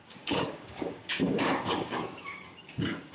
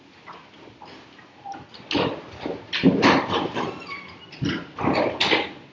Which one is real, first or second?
second